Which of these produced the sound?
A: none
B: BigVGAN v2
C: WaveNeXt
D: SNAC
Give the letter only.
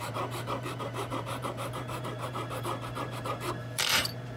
B